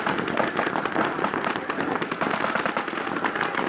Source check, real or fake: real